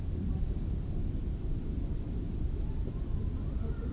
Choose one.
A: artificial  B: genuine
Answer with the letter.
A